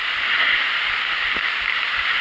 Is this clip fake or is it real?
real